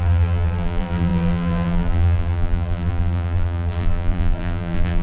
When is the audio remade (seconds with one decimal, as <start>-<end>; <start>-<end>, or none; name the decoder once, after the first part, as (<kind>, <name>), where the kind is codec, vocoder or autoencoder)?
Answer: 0.0-5.0 (vocoder, BigVGAN v2)